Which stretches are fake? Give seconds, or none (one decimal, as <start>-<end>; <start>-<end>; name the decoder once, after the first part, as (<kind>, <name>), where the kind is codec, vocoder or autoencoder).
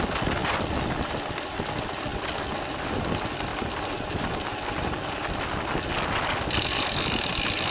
none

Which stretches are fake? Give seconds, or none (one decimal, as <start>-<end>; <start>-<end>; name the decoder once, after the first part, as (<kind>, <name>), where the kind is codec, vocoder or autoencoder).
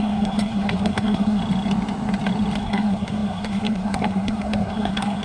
0.0-1.4 (codec, SNAC); 2.6-5.2